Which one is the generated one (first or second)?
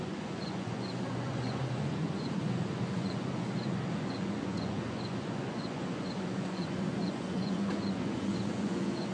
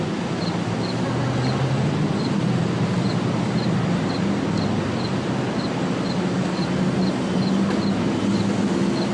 first